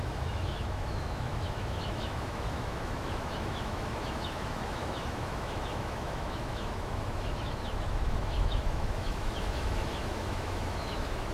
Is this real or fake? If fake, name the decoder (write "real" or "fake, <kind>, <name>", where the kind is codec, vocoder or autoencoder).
fake, autoencoder, DAC-VAE